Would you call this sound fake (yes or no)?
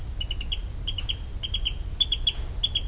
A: no